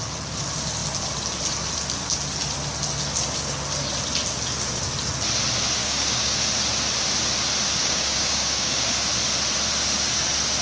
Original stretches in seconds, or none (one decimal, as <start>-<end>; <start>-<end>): 0.0-5.8; 6.4-7.8; 9.1-10.6